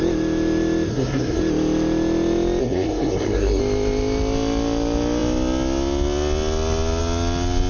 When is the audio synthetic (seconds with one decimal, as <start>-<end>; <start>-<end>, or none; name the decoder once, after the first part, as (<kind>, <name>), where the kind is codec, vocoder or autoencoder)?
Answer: 0.9-1.4 (codec, SNAC); 2.6-3.6